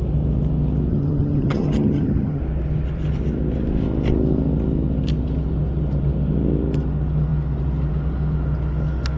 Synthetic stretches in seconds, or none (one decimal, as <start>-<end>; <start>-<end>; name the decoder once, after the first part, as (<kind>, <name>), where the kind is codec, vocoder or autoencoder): 0.9-2.4 (vocoder, HiFi-GAN)

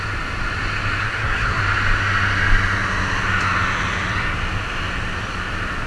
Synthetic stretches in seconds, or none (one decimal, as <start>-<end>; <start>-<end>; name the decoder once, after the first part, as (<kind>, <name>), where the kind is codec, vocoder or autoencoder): 1.0-1.6 (codec, SNAC)

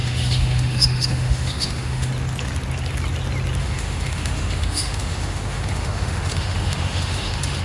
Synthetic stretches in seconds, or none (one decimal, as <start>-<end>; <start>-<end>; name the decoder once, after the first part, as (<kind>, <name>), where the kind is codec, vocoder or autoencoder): 0.0-2.1 (autoencoder, DAC-VAE); 3.6-7.6

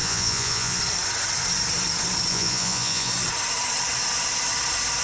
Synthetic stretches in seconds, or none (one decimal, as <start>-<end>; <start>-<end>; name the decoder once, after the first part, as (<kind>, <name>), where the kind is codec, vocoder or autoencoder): 0.0-0.8 (vocoder, Vocos); 2.3-3.1